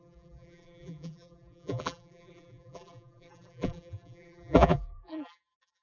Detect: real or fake fake